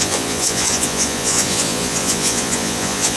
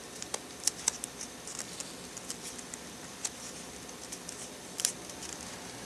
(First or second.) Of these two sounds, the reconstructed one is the first